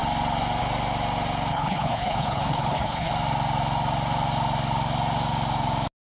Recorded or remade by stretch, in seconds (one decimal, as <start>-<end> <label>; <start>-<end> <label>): 0.0-1.5 recorded; 1.5-3.1 remade; 3.1-6.0 recorded